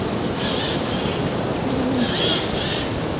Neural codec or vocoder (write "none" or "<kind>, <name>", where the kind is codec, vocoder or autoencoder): none